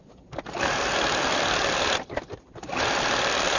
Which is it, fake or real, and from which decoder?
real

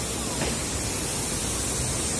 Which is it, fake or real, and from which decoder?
real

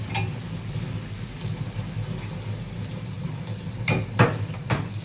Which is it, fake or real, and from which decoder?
real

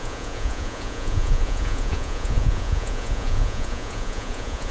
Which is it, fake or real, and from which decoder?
fake, vocoder, Vocos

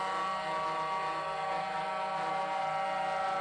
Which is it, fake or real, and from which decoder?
real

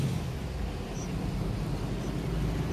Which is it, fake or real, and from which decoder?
real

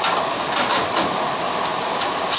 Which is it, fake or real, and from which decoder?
real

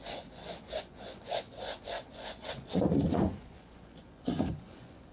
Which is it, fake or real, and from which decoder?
fake, vocoder, Vocos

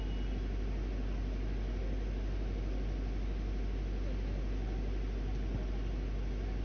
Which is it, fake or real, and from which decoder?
real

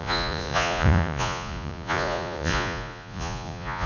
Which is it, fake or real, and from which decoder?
fake, vocoder, Vocos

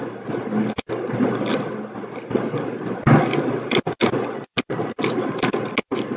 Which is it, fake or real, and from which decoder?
real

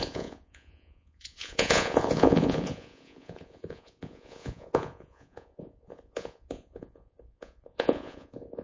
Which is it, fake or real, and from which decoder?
fake, vocoder, Vocos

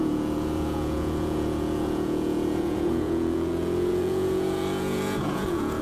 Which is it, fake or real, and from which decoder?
fake, vocoder, Vocos